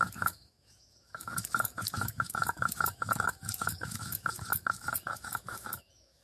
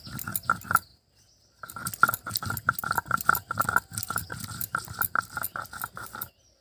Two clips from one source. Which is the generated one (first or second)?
first